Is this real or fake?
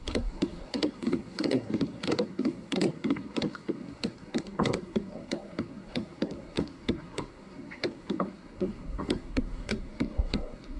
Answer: fake